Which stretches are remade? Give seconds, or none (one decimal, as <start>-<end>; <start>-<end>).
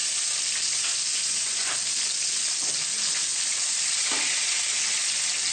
1.1-1.7